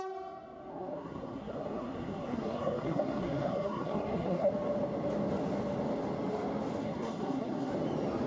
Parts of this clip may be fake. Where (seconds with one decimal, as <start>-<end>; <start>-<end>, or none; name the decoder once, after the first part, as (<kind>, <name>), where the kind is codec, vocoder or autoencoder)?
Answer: 0.7-4.5 (codec, SNAC); 6.8-7.7